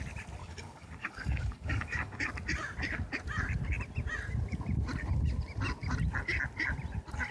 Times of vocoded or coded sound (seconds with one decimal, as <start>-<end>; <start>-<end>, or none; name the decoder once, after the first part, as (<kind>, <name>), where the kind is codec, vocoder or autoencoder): 0.4-2.3 (codec, DAC)